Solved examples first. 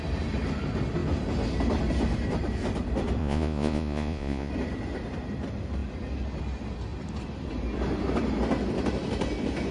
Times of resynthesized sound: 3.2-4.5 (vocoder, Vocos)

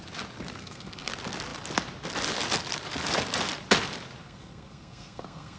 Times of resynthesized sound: 0.6-1.1 (codec, SNAC); 4.2-5.6

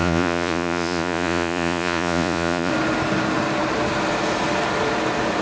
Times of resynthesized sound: 0.0-2.7 (vocoder, Vocos)